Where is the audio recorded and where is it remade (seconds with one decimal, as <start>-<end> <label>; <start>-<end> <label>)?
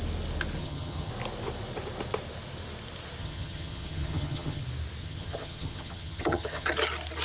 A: 0.0-0.6 recorded; 0.6-1.1 remade; 1.1-3.2 recorded; 3.2-4.6 remade; 4.6-5.0 recorded; 5.0-6.7 remade; 6.7-7.2 recorded